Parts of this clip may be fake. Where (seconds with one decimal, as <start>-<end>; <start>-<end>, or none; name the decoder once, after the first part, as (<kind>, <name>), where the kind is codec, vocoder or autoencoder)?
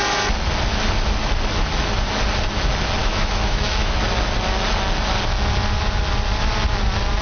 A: 3.0-4.0 (autoencoder, DAC-VAE)